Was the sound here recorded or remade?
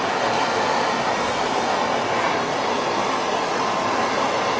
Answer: recorded